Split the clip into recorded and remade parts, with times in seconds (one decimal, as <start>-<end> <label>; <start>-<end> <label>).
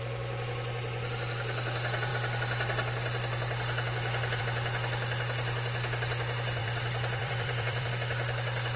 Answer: 0.0-6.6 recorded; 6.6-7.9 remade; 7.9-8.8 recorded